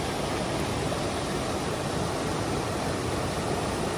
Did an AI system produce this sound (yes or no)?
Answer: no